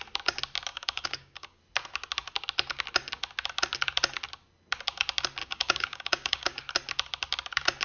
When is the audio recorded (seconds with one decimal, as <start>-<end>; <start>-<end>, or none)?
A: 0.0-0.7; 1.6-5.4; 6.6-7.8